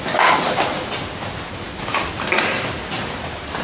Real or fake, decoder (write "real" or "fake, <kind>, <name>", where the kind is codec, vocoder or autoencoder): real